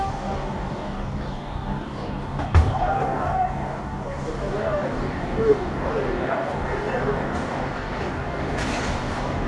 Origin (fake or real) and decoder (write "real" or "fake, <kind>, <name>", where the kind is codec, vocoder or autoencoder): fake, codec, DAC